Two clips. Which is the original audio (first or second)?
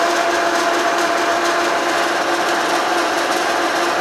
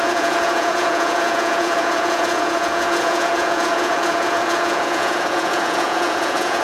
first